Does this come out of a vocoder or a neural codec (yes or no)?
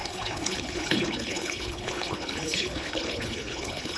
yes